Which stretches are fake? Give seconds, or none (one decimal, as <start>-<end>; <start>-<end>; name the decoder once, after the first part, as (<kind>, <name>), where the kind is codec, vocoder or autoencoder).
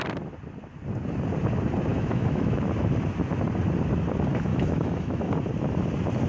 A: 1.9-2.6 (autoencoder, DAC-VAE); 4.5-5.3